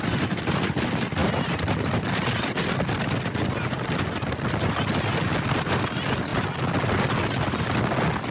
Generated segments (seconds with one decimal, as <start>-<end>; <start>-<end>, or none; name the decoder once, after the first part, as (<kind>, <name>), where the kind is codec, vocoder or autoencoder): none